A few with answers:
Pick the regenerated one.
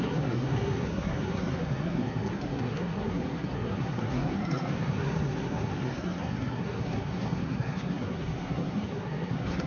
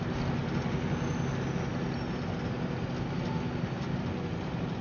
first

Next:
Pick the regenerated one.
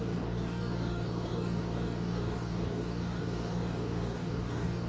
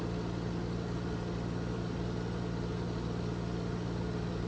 first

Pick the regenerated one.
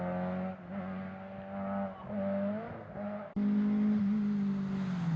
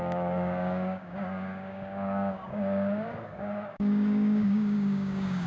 second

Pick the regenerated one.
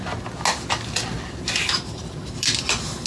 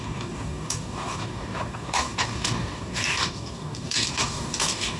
second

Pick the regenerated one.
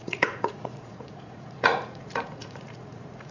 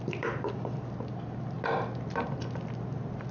first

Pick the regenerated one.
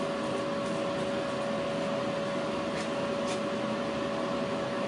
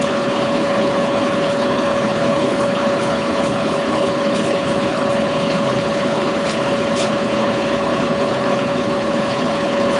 second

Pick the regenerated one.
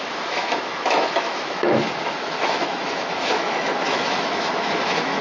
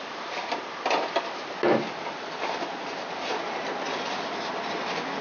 first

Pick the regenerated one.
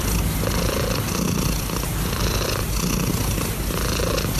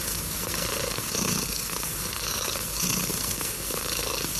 second